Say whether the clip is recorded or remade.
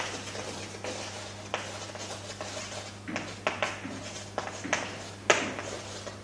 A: recorded